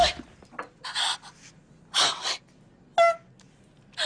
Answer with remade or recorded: recorded